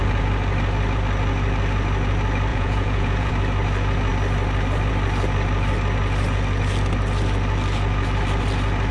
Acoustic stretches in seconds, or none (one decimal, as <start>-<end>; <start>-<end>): 0.0-2.5; 3.3-8.9